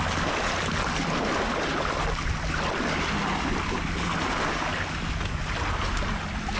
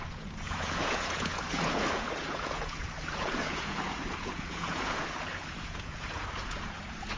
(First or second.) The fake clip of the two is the second